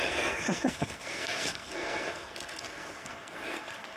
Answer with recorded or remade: remade